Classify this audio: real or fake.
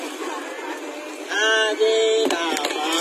real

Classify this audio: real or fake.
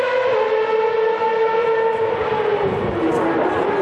real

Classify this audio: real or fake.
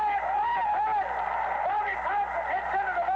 real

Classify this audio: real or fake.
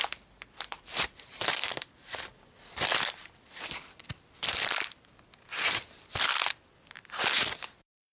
fake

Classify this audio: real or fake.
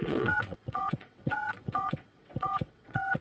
fake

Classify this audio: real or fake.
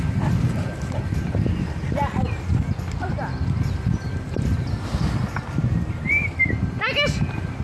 real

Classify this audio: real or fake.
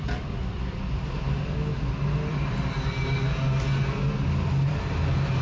real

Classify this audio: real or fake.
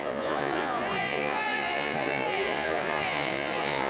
fake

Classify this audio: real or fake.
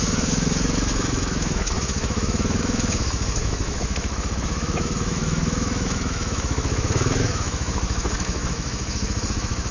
fake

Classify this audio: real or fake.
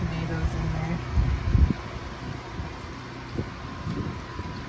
real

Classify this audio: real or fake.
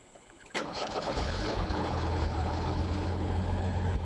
fake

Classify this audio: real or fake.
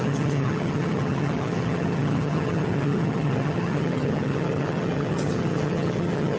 fake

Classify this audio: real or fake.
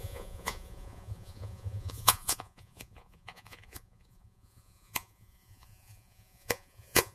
fake